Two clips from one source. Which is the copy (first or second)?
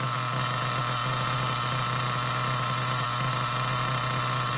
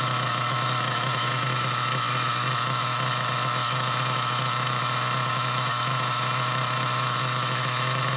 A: second